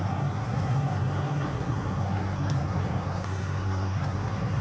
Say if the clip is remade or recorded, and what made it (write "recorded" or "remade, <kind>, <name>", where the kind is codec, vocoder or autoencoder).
remade, codec, SNAC